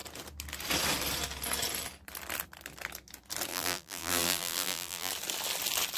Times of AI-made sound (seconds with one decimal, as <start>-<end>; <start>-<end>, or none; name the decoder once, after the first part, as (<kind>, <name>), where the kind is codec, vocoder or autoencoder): 3.5-5.1 (vocoder, BigVGAN v2)